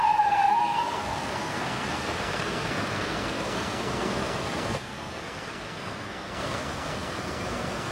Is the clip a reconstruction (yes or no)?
yes